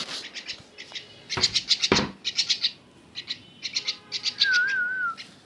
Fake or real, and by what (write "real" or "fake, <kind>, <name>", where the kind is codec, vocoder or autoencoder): real